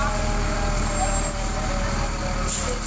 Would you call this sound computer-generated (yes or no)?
no